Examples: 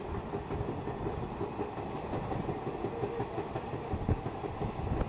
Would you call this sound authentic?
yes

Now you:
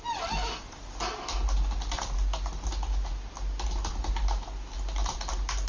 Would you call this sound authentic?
yes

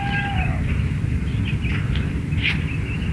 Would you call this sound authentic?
yes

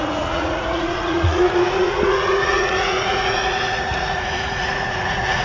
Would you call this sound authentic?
no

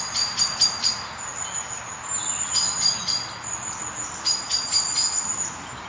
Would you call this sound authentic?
yes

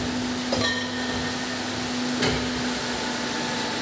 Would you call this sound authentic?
yes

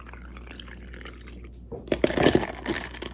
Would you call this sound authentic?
yes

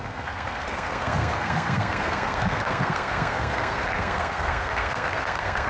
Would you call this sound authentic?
no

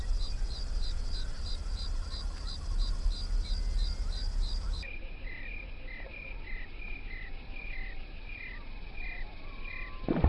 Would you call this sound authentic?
yes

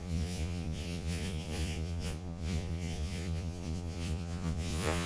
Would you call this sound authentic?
no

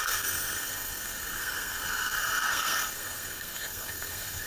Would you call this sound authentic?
no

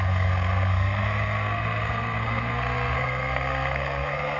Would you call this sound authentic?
no